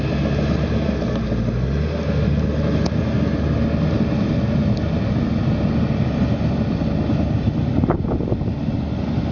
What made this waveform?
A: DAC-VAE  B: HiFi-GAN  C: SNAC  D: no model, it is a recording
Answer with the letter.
D